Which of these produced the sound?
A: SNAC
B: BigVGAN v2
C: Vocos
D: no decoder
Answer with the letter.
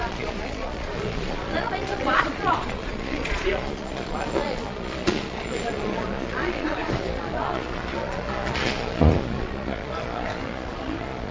C